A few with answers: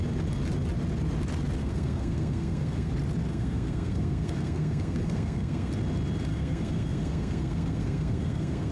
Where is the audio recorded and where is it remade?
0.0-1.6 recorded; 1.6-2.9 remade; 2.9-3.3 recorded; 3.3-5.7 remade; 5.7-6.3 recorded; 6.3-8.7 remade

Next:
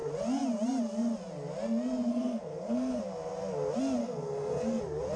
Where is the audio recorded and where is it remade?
0.0-2.1 recorded; 2.1-3.0 remade; 3.0-4.0 recorded; 4.0-4.8 remade; 4.8-5.2 recorded